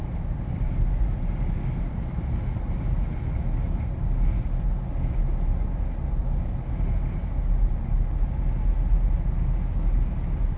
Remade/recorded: recorded